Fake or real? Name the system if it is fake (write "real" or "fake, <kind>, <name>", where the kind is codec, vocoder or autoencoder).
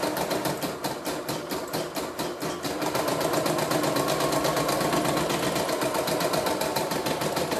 real